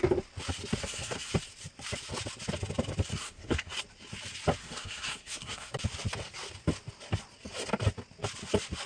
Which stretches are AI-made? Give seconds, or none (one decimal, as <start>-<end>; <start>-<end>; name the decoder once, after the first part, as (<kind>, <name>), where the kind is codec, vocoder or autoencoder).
0.8-1.3 (codec, SNAC); 3.1-3.7; 4.6-5.7